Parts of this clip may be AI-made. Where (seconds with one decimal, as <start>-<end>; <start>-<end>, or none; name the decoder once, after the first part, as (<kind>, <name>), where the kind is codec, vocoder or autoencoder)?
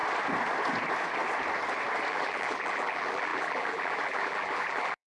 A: 2.1-5.1 (vocoder, BigVGAN v2)